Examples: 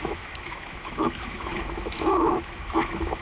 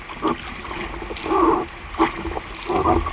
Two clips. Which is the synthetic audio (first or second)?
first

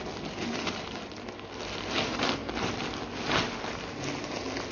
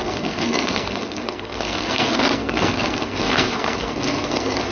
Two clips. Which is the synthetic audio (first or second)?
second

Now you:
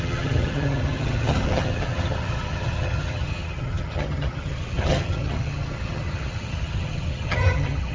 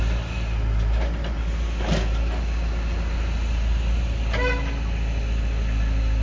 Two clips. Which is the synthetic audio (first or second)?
first